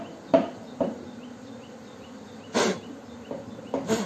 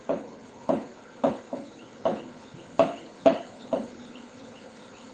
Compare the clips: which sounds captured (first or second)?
first